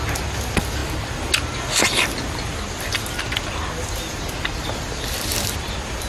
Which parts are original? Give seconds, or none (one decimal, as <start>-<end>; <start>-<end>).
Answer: 0.0-5.3

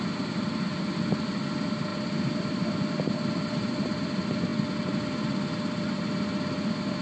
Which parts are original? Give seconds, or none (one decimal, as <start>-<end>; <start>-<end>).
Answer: 0.0-7.0

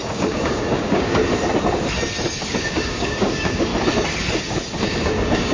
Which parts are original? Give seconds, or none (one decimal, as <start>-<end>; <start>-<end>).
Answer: 1.2-2.6; 3.7-4.8